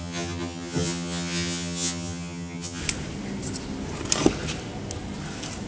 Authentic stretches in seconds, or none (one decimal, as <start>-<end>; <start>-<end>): 2.8-5.7